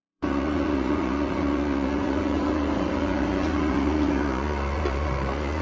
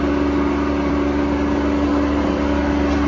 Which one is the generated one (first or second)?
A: first